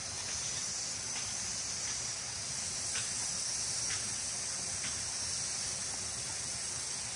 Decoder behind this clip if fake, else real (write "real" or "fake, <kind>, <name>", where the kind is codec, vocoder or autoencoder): real